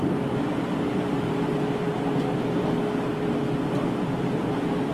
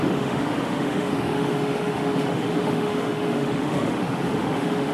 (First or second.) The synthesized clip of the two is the second